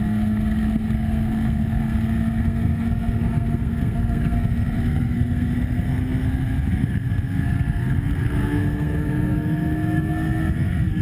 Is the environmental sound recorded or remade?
remade